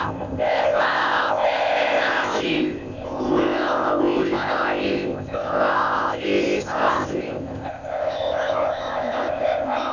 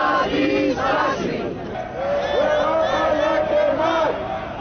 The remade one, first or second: first